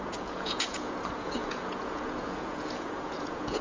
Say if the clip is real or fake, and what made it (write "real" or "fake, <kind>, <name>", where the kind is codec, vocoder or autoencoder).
fake, vocoder, Vocos